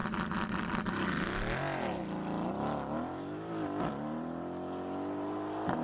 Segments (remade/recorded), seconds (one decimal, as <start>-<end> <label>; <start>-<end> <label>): 0.0-5.8 recorded